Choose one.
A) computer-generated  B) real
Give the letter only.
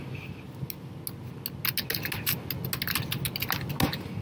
B